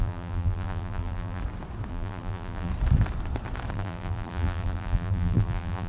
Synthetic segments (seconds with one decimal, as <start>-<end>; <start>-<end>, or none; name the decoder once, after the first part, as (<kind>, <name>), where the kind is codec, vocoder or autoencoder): 0.0-1.4 (vocoder, BigVGAN v2); 1.9-2.7; 3.7-5.9